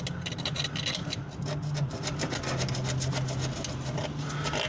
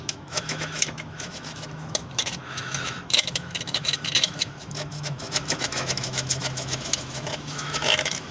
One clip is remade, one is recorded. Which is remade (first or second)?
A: second